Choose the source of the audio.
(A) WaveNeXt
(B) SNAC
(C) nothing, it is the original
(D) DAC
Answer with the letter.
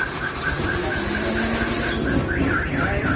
C